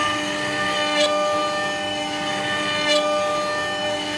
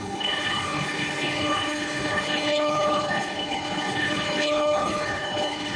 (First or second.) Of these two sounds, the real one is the first